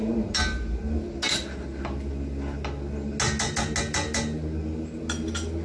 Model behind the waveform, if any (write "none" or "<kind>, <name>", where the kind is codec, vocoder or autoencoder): none